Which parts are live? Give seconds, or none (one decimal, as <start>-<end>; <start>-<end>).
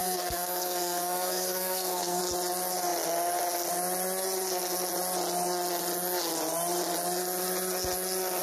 2.2-8.4